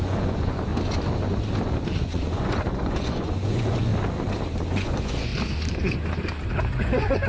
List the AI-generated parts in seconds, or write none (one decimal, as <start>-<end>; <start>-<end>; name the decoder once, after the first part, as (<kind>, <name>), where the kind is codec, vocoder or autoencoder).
0.0-0.7 (vocoder, Vocos); 1.9-3.9; 4.7-5.3; 6.5-7.3